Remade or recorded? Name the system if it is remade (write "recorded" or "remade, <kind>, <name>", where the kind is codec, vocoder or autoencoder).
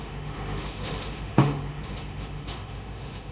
remade, autoencoder, DAC-VAE